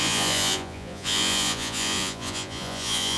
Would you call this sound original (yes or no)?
no